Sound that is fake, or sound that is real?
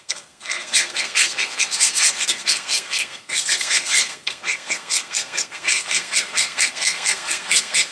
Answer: fake